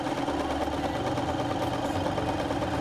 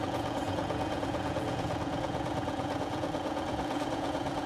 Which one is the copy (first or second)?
second